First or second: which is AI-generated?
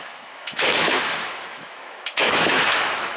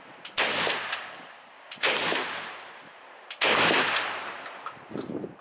first